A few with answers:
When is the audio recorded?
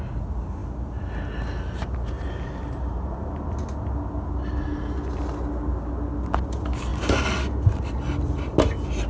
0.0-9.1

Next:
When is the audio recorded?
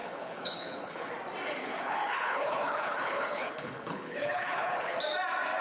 1.1-1.6; 5.0-5.6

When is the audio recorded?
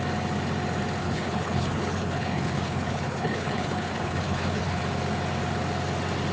0.0-1.0; 4.8-6.3